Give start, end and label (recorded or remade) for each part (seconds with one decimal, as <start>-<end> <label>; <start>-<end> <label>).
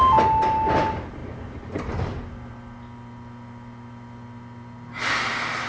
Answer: 0.0-5.7 recorded